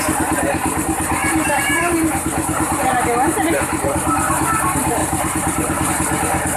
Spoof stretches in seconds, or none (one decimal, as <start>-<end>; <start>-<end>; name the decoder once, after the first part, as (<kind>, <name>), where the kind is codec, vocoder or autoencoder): 1.2-2.9 (vocoder, BigVGAN v2); 5.0-5.9